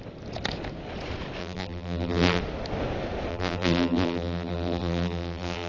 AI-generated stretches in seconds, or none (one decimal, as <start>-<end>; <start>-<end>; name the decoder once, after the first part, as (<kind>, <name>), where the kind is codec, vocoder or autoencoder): 1.4-2.4 (vocoder, BigVGAN v2); 3.3-5.7